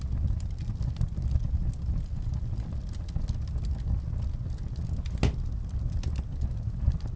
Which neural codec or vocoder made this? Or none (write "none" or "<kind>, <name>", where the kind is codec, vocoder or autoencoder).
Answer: none